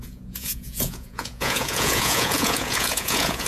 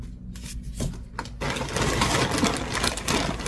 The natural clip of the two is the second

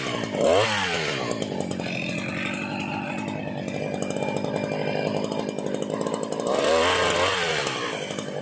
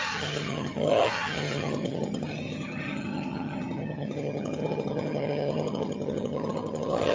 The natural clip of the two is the first